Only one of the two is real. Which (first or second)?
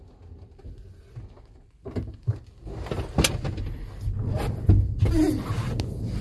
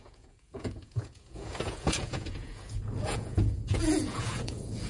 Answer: first